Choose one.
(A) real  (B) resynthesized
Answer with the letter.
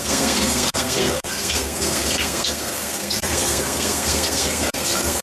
B